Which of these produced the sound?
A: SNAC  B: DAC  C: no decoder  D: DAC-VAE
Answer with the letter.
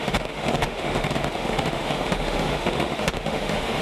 D